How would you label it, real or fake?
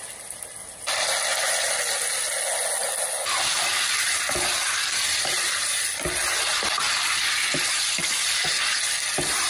real